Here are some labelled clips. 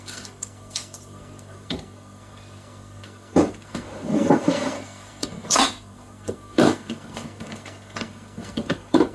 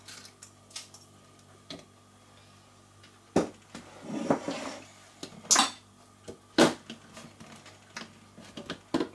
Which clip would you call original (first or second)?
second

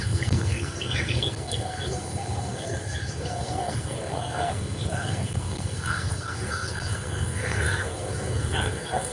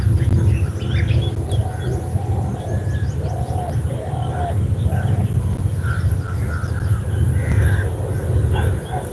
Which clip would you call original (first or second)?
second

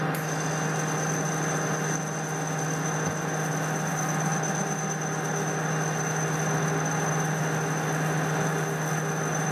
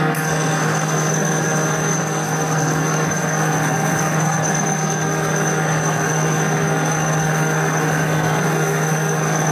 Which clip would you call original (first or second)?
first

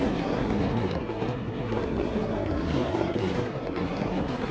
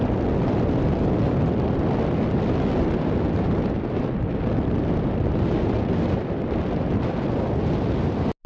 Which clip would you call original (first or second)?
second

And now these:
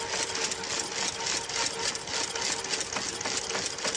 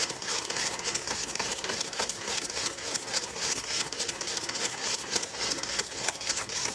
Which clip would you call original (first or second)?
first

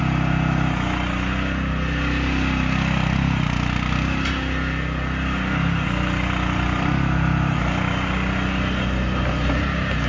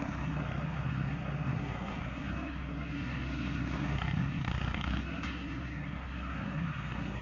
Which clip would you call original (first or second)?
first